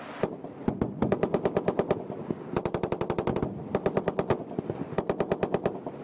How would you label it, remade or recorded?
recorded